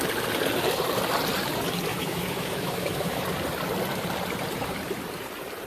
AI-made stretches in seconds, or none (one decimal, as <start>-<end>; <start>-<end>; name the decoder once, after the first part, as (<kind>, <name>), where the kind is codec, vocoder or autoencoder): 1.9-3.2 (autoencoder, DAC-VAE)